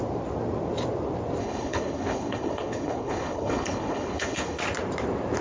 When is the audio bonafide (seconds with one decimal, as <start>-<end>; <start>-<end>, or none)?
0.0-1.4; 4.6-5.4